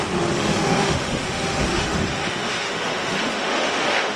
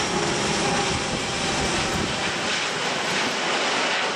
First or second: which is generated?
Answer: first